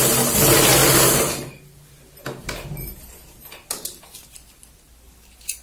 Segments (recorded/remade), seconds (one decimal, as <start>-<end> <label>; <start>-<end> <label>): 0.0-2.4 recorded; 2.4-3.4 remade; 3.4-5.6 recorded